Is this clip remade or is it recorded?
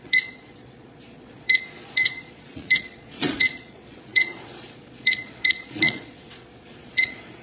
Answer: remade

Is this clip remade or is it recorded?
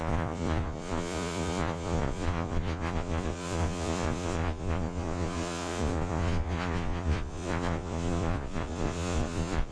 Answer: remade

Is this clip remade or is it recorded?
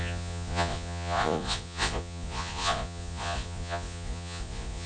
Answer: remade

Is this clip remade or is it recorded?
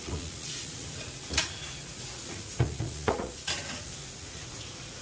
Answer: remade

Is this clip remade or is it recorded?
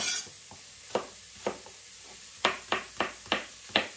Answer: recorded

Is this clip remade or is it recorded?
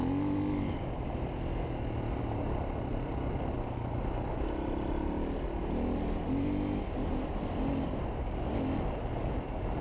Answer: recorded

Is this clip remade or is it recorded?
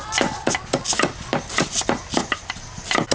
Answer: recorded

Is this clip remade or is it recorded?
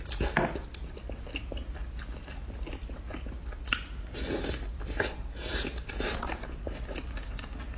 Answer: recorded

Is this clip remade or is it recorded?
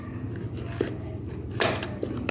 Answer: recorded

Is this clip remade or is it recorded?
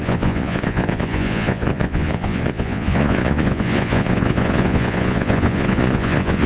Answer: remade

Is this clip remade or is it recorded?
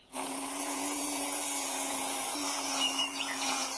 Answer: remade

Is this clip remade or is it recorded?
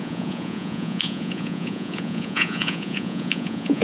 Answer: remade